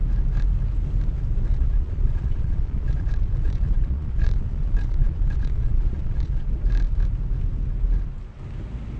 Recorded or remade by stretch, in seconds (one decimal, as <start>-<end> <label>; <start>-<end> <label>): 0.0-1.5 recorded; 1.5-6.5 remade; 6.5-9.0 recorded